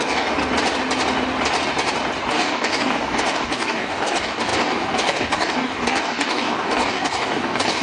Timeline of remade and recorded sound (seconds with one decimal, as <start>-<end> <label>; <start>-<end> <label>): 0.0-0.4 remade; 0.4-2.3 recorded; 2.3-7.8 remade